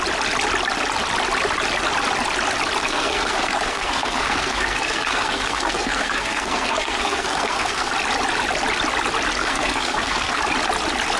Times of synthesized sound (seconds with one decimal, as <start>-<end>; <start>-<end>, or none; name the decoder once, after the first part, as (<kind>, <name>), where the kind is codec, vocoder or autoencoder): 2.8-7.9 (codec, SNAC); 9.4-10.4